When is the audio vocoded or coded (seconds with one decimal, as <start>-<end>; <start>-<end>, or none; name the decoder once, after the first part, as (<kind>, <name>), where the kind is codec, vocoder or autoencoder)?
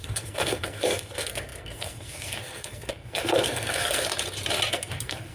0.0-4.1 (codec, SNAC); 4.7-5.3